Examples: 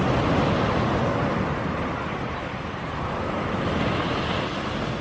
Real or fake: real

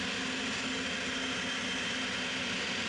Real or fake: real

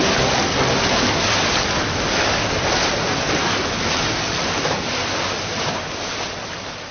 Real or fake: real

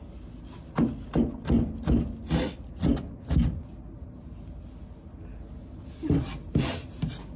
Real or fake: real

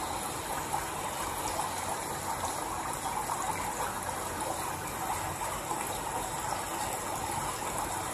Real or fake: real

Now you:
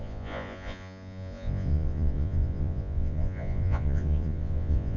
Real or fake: fake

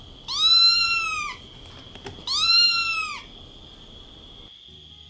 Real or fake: real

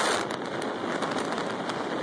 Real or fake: real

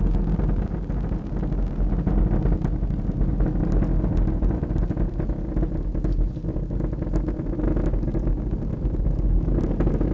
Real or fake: real